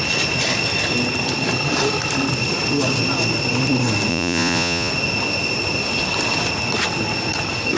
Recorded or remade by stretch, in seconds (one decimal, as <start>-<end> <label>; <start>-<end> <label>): 0.0-4.1 recorded; 4.1-4.9 remade; 4.9-7.8 recorded